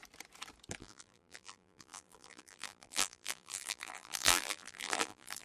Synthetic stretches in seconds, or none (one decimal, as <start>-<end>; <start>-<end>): 0.8-5.4